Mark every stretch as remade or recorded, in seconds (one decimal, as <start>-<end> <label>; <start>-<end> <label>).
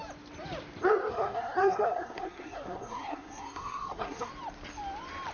0.0-1.1 recorded; 1.1-4.3 remade; 4.3-5.3 recorded